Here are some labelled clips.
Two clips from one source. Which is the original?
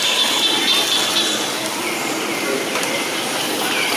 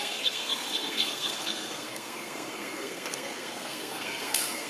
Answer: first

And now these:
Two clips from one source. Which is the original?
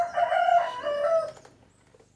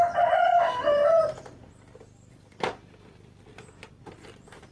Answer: first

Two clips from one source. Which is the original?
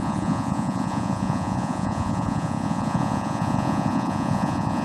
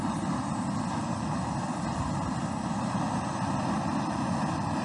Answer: second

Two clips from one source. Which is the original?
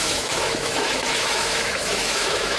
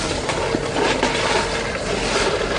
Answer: second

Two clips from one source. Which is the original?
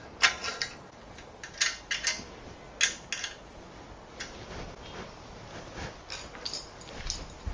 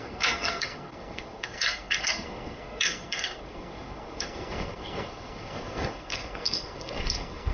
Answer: first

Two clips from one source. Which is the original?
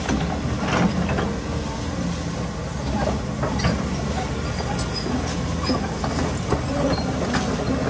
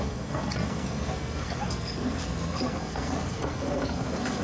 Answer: first